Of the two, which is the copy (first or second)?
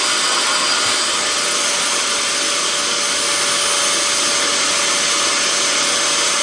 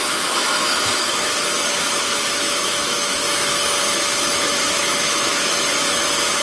second